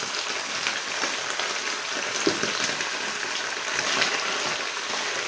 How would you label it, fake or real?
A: real